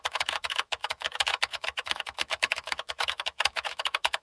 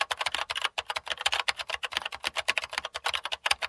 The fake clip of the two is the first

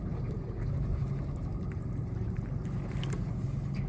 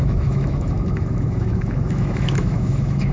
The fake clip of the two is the second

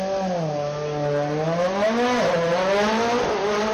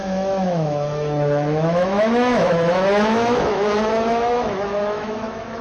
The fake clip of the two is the second